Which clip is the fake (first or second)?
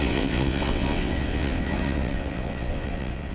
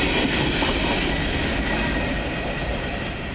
first